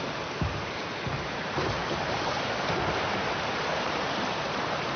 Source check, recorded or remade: remade